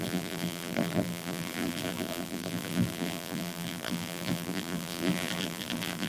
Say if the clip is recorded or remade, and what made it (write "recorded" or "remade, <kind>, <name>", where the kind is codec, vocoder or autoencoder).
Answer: remade, vocoder, BigVGAN v2